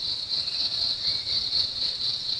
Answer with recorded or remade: remade